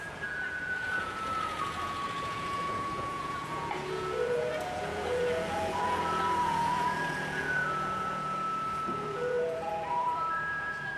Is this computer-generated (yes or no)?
yes